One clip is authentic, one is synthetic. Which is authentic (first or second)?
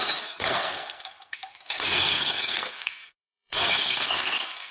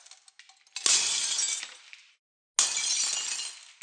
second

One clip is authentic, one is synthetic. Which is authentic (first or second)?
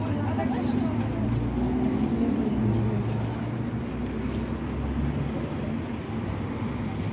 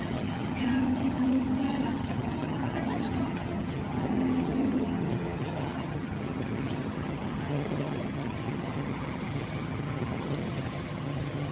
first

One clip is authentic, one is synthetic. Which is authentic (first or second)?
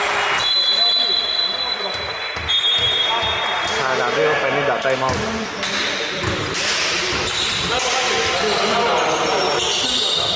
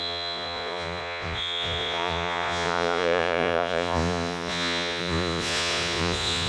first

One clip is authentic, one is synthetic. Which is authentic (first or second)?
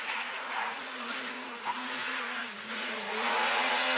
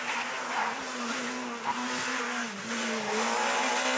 second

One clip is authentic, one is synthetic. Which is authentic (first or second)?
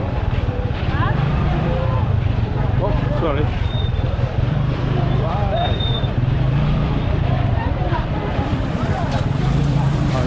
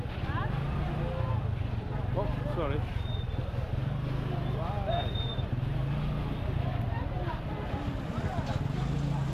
second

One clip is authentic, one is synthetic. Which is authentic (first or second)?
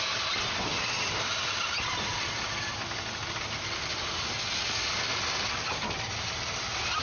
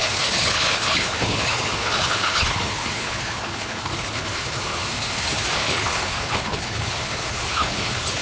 first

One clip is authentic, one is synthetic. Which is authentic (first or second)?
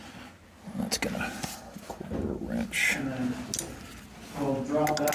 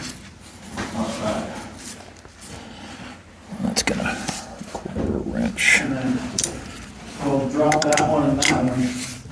first